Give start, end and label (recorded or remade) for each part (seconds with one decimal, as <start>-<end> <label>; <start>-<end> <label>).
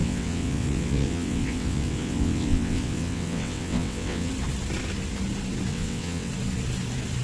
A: 0.0-4.3 remade; 4.3-5.7 recorded; 5.7-6.3 remade; 6.3-7.2 recorded